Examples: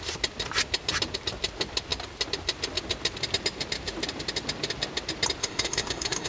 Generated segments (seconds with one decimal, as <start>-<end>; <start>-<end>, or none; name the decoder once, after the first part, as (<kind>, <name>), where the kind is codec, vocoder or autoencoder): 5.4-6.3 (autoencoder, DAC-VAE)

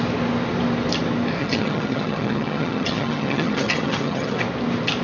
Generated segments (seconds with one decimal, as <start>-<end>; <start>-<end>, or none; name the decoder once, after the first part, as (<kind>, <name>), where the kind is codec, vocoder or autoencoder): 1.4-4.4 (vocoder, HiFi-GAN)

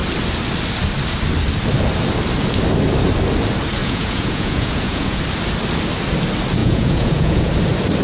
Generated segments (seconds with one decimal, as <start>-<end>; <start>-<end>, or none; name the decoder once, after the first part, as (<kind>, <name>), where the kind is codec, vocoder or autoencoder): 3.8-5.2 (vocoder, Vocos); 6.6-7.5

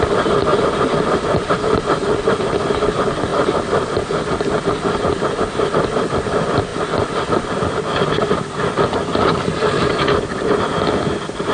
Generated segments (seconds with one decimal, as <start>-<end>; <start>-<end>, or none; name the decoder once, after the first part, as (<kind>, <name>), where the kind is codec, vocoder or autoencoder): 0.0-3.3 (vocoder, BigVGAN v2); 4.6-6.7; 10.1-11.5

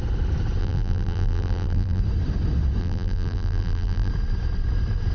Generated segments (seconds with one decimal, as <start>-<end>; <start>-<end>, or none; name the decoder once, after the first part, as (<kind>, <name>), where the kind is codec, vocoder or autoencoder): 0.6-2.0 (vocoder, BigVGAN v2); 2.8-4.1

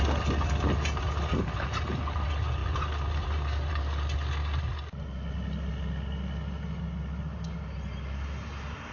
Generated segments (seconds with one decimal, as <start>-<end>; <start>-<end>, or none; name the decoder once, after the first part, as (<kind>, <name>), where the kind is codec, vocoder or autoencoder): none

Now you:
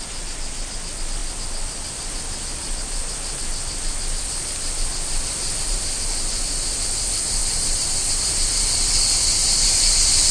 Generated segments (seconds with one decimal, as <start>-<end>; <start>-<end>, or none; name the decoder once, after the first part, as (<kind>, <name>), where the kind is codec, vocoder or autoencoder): 7.4-8.1 (vocoder, BigVGAN v2); 9.4-10.3

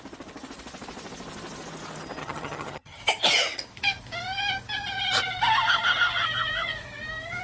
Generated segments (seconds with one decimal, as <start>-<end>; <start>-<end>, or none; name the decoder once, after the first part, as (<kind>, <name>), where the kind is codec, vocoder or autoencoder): 2.2-3.0 (vocoder, HiFi-GAN)